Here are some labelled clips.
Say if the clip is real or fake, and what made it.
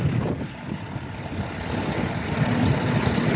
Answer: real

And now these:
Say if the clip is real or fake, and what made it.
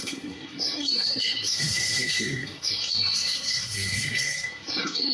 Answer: fake, codec, SNAC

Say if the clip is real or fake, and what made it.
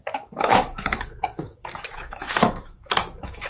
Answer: fake, autoencoder, DAC-VAE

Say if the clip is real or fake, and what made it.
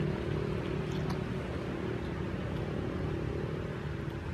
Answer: real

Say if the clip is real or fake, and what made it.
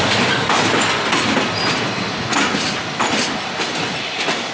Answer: real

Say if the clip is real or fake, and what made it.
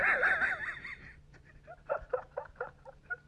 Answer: real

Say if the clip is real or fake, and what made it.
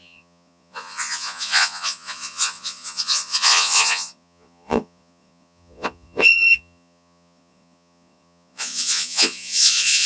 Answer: fake, vocoder, Vocos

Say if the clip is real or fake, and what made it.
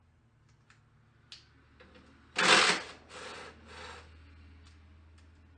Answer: real